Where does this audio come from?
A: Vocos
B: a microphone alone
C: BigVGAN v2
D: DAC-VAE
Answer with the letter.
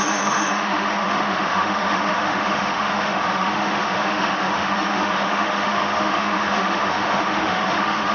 D